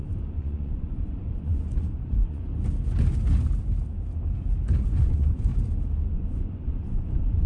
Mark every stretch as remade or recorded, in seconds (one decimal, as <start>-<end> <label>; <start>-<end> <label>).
0.0-2.5 remade; 2.5-4.8 recorded; 4.8-5.5 remade; 5.5-6.1 recorded; 6.1-7.5 remade